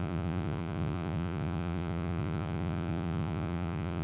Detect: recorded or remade remade